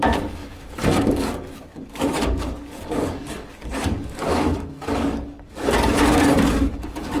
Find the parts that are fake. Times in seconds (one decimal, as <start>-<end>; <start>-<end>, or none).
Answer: 0.0-7.2

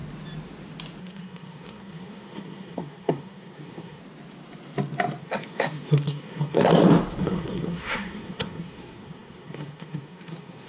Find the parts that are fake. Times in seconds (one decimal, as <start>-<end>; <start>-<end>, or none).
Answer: 1.0-4.0; 5.2-6.7; 7.2-10.7